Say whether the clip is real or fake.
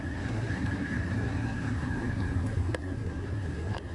fake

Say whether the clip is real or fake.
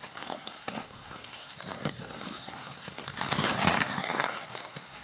fake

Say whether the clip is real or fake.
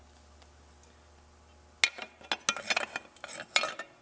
real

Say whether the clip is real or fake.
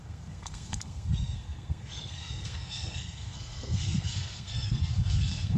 fake